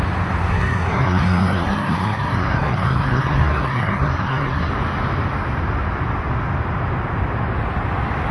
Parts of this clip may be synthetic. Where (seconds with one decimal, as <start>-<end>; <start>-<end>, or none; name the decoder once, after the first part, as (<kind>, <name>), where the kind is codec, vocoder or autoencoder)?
0.5-4.7 (codec, SNAC)